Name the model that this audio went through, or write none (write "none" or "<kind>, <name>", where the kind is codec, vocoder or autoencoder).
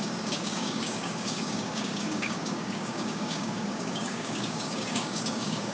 codec, DAC